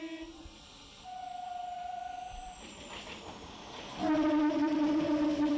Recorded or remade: remade